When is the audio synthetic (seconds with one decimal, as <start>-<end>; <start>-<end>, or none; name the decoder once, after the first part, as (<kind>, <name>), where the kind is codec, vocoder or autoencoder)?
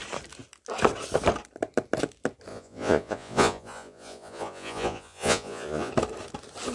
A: 2.5-5.9 (vocoder, Vocos)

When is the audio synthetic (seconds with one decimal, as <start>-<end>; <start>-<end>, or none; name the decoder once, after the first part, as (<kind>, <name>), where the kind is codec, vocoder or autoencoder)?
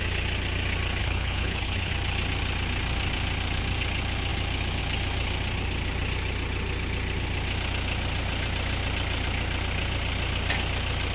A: 1.0-1.9 (codec, HILCodec)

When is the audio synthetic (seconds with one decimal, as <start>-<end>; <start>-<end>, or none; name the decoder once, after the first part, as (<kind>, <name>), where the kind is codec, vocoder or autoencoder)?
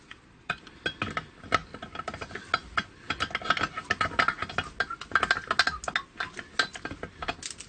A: 0.0-0.6 (vocoder, Vocos)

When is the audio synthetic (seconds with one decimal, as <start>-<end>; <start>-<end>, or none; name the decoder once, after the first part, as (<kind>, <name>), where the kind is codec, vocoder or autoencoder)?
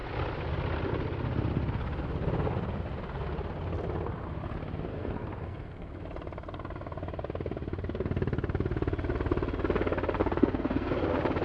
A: 4.9-5.9 (codec, SNAC); 10.2-10.9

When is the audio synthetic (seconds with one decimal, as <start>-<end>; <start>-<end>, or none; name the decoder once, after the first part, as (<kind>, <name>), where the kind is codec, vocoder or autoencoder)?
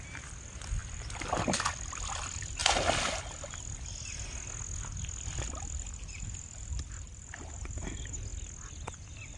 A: none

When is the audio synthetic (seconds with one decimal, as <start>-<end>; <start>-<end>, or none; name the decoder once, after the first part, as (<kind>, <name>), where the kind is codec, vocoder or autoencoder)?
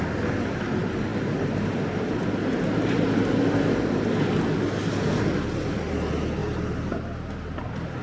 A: none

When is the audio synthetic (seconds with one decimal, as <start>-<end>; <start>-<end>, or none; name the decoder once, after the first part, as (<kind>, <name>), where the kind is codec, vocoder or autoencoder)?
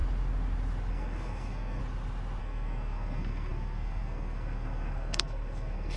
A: 0.9-1.8 (codec, SNAC); 2.4-6.0